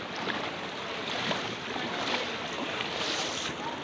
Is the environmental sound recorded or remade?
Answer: remade